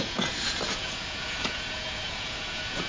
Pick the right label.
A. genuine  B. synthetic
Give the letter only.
B